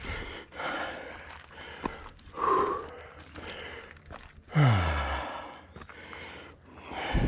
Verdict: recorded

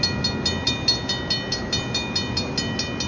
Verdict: recorded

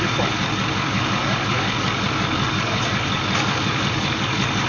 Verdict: remade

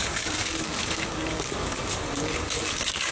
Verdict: remade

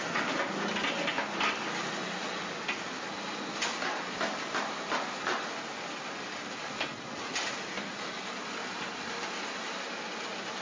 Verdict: recorded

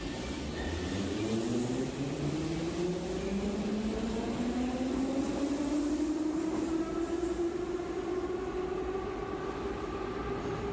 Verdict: recorded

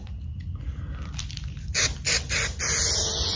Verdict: recorded